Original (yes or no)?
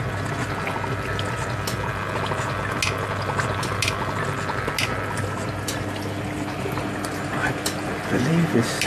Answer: yes